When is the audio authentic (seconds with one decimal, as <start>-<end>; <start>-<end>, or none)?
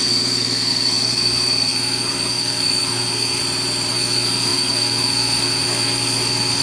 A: 3.4-3.9